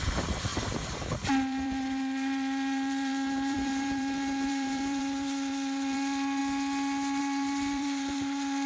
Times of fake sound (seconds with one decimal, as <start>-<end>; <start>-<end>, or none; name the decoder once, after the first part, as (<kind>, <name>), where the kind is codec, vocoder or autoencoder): 0.0-6.4 (vocoder, BigVGAN v2); 7.2-8.7